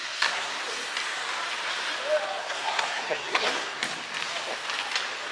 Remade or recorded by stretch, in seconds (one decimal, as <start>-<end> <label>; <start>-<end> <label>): 0.0-0.6 remade; 0.6-2.4 recorded; 2.4-3.8 remade; 3.8-5.3 recorded